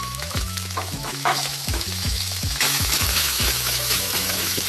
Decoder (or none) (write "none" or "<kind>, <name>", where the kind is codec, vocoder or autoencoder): autoencoder, DAC-VAE